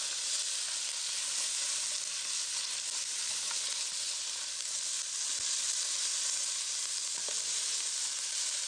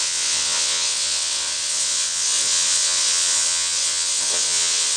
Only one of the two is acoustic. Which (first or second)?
first